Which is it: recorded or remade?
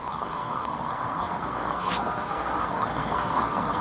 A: remade